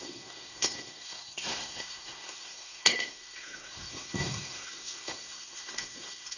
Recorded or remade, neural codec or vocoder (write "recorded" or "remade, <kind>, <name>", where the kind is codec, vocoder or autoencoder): remade, codec, SNAC